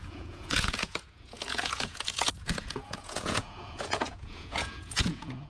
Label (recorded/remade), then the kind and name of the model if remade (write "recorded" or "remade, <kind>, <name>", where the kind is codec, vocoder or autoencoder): remade, vocoder, Vocos